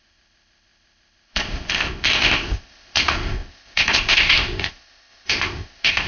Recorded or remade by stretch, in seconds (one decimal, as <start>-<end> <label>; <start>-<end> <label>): 0.0-6.1 remade